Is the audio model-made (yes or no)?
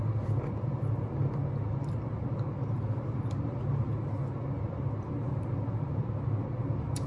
no